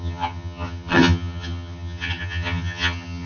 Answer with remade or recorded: remade